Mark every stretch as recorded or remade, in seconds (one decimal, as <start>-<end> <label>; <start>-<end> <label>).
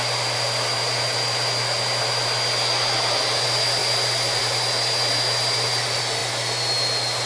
0.0-7.3 recorded